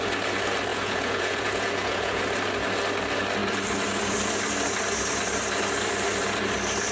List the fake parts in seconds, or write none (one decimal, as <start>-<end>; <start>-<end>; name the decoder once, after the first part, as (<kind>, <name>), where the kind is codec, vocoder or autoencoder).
0.7-2.2 (vocoder, Vocos)